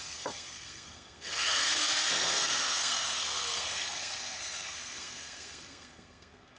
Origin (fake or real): fake